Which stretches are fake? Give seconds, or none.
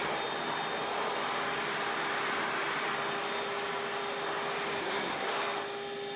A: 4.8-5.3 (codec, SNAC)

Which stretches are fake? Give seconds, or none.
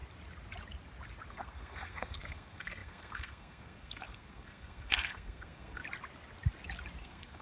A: 1.3-5.8 (codec, SNAC); 7.0-7.4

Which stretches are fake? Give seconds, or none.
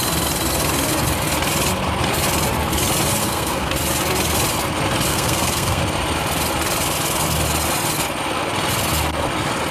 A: 3.2-3.7 (codec, SNAC); 5.1-5.8